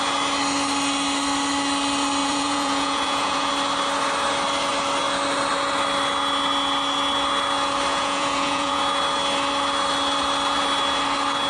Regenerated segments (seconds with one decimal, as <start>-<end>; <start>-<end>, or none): 2.2-3.5; 7.9-8.8